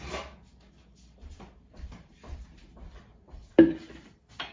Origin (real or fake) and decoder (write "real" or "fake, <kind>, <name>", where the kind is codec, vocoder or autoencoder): real